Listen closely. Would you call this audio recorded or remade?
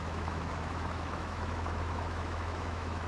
remade